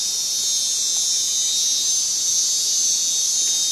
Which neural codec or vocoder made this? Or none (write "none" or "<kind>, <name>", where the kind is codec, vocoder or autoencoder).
none